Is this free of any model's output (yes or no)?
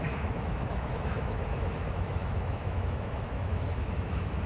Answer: no